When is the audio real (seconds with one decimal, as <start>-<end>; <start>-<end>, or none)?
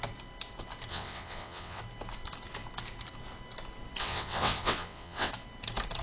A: 0.0-0.9; 1.8-4.0; 5.3-6.0